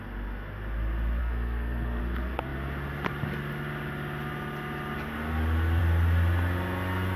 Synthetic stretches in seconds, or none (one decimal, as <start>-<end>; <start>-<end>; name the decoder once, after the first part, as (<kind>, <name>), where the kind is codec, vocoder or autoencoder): 1.2-2.0 (codec, SNAC)